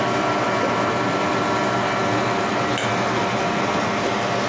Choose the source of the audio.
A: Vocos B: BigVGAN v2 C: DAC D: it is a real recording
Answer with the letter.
D